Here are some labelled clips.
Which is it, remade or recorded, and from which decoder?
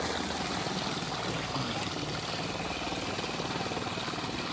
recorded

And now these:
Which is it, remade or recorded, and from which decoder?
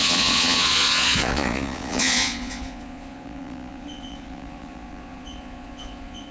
remade, vocoder, Vocos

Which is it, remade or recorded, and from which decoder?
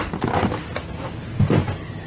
remade, vocoder, BigVGAN v2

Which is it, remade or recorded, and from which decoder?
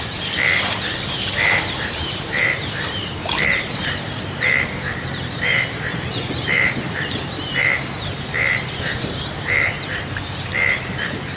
remade, vocoder, BigVGAN v2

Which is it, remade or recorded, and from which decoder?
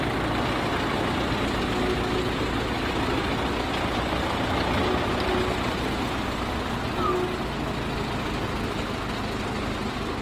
recorded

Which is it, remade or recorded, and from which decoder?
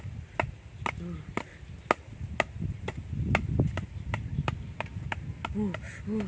recorded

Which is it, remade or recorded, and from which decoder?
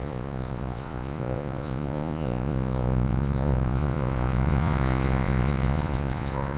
remade, vocoder, Vocos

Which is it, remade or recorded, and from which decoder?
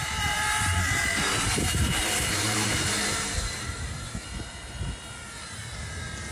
remade, vocoder, BigVGAN v2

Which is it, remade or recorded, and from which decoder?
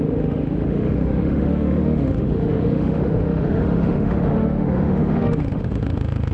remade, autoencoder, DAC-VAE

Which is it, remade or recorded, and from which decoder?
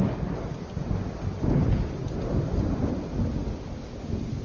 recorded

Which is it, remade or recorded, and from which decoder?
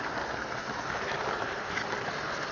recorded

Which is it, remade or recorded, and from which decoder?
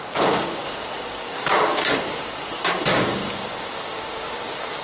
remade, codec, DAC